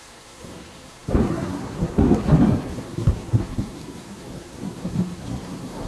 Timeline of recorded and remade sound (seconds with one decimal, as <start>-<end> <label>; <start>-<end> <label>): 0.0-5.9 remade

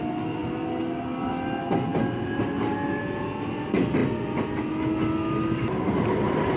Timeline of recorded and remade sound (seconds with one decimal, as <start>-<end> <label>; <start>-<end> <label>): 0.0-6.6 recorded